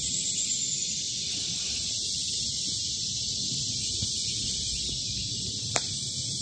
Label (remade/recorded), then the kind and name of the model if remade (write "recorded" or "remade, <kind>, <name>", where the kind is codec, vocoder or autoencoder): recorded